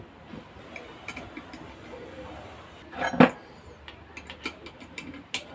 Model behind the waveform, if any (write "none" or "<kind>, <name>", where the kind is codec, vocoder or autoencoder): none